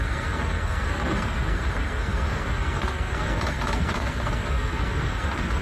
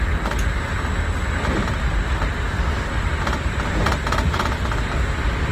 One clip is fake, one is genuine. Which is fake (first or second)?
first